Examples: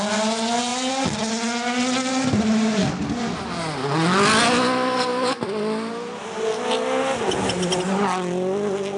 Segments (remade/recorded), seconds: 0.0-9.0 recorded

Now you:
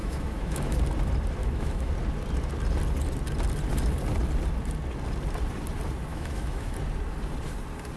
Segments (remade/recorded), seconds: 0.0-0.8 remade; 0.8-1.4 recorded; 1.4-1.9 remade; 1.9-6.1 recorded; 6.1-6.7 remade; 6.7-8.0 recorded

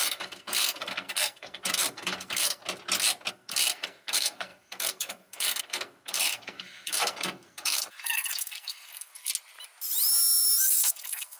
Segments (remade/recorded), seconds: 0.0-2.6 remade; 2.6-3.3 recorded; 3.3-9.3 remade; 9.3-10.6 recorded; 10.6-11.4 remade

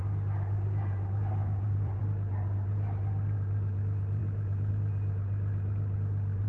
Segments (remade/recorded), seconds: 0.0-1.4 recorded; 1.4-2.0 remade; 2.0-4.2 recorded; 4.2-4.7 remade; 4.7-6.5 recorded

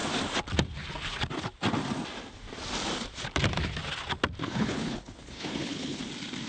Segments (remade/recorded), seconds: 0.0-4.4 recorded; 4.4-6.0 remade; 6.0-6.5 recorded